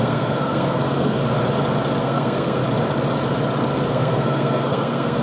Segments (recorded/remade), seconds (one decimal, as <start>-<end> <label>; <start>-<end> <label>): 0.0-1.2 remade; 1.2-2.0 recorded; 2.0-2.6 remade; 2.6-3.9 recorded; 3.9-5.2 remade